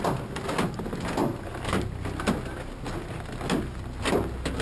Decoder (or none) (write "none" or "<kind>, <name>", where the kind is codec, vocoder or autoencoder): none